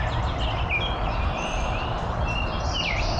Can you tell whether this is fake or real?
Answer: real